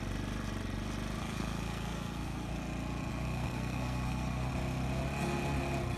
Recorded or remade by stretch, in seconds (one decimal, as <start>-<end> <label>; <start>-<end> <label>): 0.0-1.2 recorded; 1.2-2.5 remade; 2.5-3.1 recorded; 3.1-4.5 remade; 4.5-6.0 recorded